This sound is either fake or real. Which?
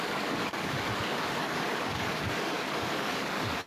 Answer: fake